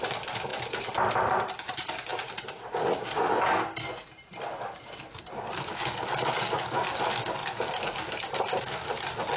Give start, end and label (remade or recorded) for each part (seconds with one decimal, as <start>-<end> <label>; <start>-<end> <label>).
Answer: 0.0-9.4 recorded